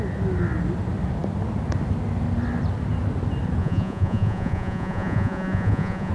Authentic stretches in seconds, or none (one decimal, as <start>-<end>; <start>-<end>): 0.0-3.6